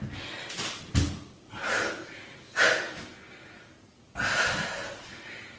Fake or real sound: real